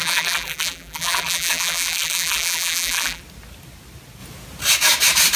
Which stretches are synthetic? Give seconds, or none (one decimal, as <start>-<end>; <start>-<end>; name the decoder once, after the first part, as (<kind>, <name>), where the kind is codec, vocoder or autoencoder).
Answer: 0.0-3.2 (vocoder, BigVGAN v2)